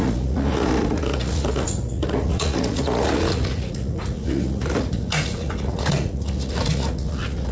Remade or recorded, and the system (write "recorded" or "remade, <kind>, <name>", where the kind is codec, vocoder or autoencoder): remade, vocoder, Vocos